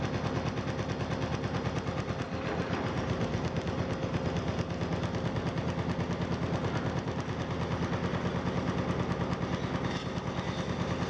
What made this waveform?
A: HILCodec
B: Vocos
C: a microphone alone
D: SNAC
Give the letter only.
C